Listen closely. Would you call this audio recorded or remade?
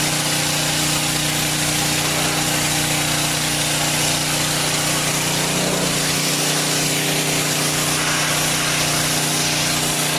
recorded